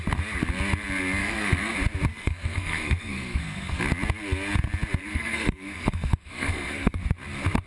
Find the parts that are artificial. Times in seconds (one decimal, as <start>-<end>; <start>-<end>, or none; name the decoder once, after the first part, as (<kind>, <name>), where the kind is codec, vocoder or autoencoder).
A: 1.2-1.7 (codec, SNAC); 2.1-3.8; 5.0-7.0